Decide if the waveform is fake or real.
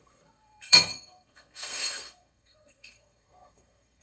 fake